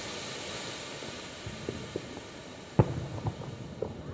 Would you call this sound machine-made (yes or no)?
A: no